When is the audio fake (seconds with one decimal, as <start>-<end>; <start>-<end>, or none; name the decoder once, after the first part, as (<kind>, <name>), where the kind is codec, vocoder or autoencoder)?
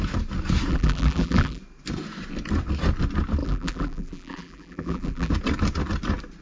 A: 0.7-1.6 (vocoder, BigVGAN v2); 3.4-5.3